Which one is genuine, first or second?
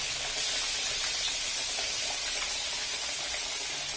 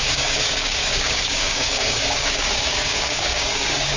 first